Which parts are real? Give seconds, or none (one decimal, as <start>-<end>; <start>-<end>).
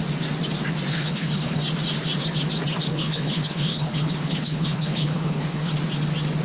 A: 0.0-0.9; 1.6-2.9; 5.7-6.4